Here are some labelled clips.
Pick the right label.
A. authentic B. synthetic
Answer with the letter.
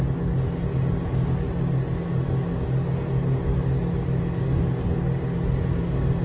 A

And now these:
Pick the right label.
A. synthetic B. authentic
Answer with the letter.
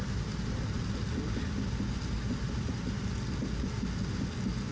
B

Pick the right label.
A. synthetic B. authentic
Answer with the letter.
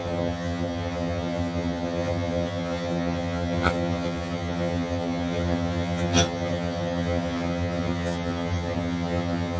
A